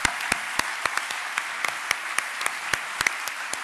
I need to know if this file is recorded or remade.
recorded